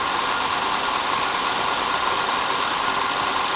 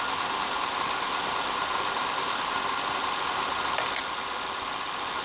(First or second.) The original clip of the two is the second